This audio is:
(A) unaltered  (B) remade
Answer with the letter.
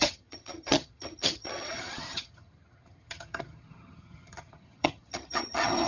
B